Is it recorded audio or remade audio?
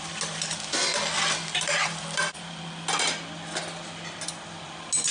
recorded